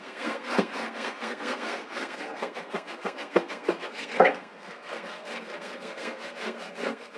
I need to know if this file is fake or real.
fake